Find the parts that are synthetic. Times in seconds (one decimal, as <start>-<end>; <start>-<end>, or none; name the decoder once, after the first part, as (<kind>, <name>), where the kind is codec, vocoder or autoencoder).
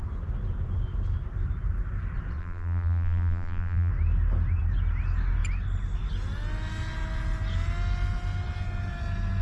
2.4-3.9 (vocoder, BigVGAN v2)